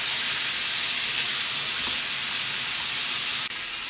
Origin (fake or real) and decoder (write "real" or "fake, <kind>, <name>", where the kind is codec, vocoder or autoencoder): real